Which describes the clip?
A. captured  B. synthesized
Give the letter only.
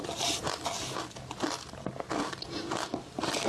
A